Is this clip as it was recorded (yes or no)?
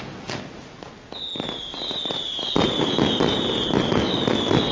yes